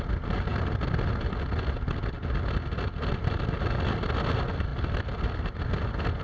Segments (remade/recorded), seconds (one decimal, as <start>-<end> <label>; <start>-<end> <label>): 0.0-6.2 recorded